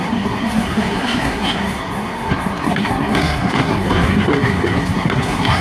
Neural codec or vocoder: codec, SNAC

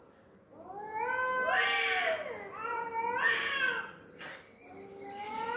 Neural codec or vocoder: none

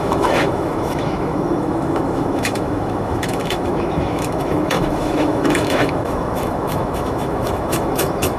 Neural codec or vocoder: autoencoder, DAC-VAE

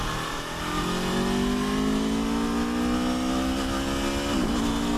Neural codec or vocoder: none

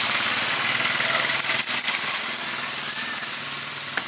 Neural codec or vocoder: none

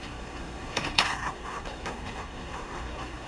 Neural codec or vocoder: codec, SNAC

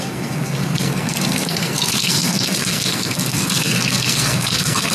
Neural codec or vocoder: codec, SNAC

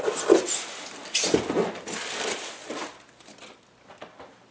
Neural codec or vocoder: none